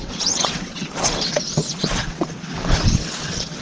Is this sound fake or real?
fake